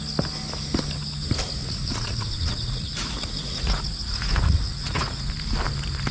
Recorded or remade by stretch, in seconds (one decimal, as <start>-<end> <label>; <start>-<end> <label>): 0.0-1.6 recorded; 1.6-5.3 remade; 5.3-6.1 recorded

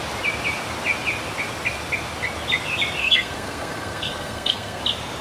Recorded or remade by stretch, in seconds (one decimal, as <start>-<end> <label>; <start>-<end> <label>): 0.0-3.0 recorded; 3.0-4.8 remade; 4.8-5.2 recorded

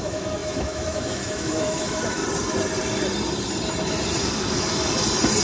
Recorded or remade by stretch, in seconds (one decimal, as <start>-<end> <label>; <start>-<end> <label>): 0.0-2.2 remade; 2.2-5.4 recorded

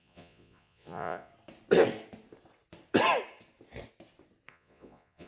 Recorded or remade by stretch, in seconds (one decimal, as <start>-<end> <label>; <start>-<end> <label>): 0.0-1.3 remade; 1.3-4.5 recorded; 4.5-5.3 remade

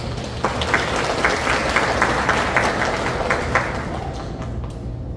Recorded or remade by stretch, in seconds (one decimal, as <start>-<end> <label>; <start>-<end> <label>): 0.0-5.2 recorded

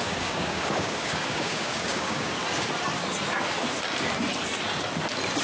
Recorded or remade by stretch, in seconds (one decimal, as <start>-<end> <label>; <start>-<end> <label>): 0.0-2.4 remade; 2.4-5.4 recorded